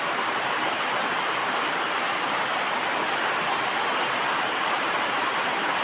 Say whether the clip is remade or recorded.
recorded